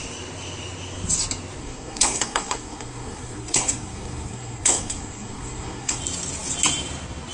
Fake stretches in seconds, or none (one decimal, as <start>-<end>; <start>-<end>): 1.6-6.0